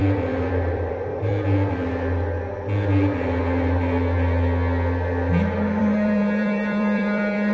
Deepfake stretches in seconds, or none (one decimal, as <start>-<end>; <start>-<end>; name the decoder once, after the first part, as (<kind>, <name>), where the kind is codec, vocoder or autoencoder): 0.0-1.3 (vocoder, BigVGAN v2); 5.8-7.5